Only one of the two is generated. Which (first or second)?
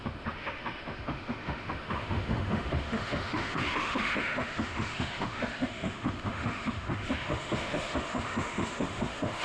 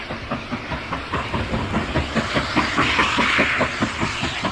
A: first